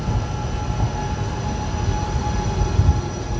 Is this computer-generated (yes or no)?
no